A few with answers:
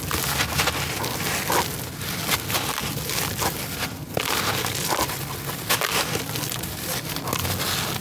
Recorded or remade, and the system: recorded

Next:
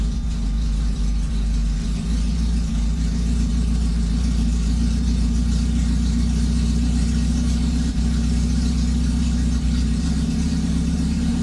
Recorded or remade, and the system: remade, vocoder, BigVGAN v2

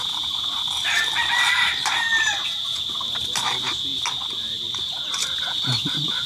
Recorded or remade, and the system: remade, vocoder, BigVGAN v2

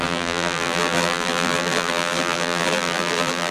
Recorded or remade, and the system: remade, vocoder, BigVGAN v2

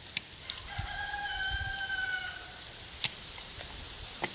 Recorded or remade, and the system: remade, vocoder, BigVGAN v2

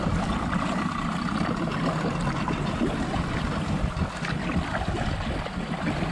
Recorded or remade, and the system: remade, vocoder, BigVGAN v2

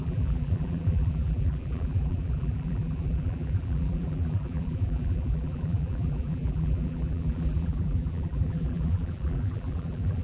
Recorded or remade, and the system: remade, vocoder, BigVGAN v2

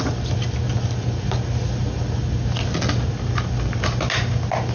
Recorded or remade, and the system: recorded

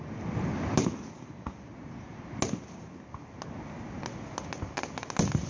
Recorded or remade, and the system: recorded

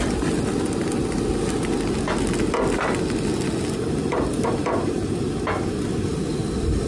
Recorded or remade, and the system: recorded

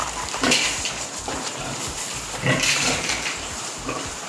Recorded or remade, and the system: remade, vocoder, BigVGAN v2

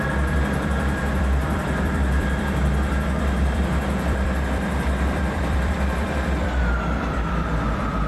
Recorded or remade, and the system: remade, vocoder, BigVGAN v2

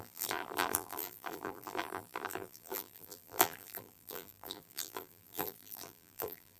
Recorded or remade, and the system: remade, vocoder, BigVGAN v2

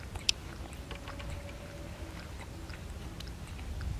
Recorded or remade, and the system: recorded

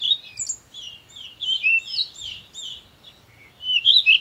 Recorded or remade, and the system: remade, vocoder, BigVGAN v2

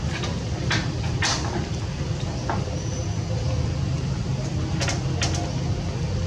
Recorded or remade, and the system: recorded